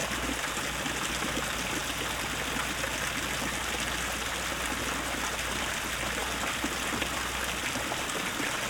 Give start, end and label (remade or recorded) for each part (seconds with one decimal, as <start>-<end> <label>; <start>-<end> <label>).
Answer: 0.0-8.7 recorded